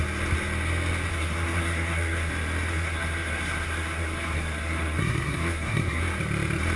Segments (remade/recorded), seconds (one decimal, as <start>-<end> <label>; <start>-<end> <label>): 0.0-1.1 recorded; 1.1-2.3 remade; 2.3-2.7 recorded; 2.7-6.0 remade; 6.0-6.8 recorded